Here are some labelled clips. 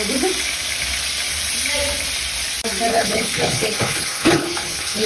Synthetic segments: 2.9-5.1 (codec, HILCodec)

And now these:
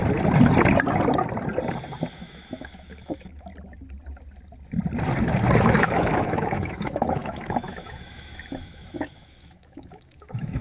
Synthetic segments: 2.1-3.5 (autoencoder, DAC-VAE); 5.6-10.6

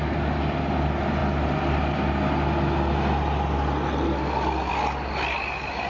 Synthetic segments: none

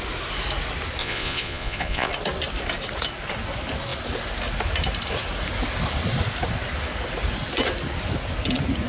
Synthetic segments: 1.0-2.1 (vocoder, Vocos)